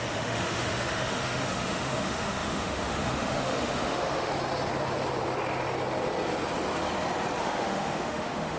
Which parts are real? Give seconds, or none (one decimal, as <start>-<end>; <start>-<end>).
4.3-7.4